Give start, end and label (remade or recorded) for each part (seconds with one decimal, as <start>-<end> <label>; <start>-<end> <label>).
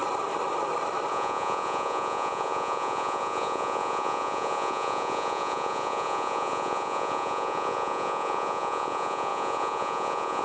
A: 0.0-1.1 recorded; 1.1-10.4 remade